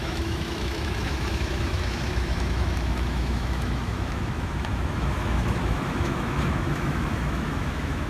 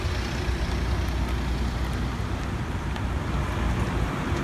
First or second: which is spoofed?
first